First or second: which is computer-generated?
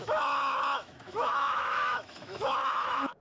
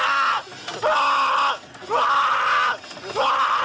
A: first